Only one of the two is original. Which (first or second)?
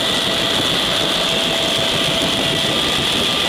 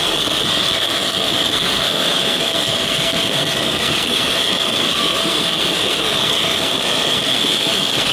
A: first